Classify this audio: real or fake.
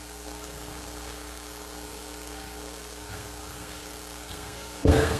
fake